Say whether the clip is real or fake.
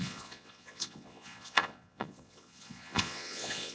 fake